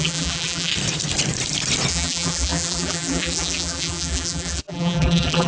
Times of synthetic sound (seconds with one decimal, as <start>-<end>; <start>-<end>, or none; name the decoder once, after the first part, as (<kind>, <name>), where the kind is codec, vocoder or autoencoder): 0.0-0.7 (vocoder, BigVGAN v2); 1.9-5.5